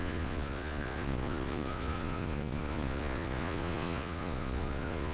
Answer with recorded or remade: remade